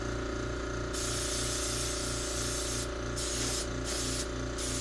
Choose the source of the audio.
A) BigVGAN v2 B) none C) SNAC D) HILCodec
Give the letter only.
B